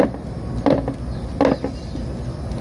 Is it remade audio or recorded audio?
recorded